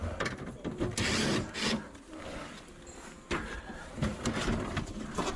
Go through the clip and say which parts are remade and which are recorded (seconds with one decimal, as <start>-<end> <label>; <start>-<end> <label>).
0.0-5.4 recorded